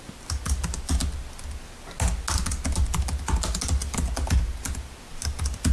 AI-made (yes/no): no